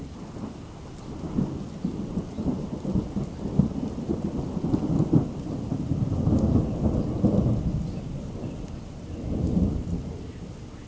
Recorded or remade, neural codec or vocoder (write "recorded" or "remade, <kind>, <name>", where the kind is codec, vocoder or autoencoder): recorded